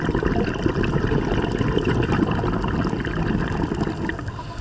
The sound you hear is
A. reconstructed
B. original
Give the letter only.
B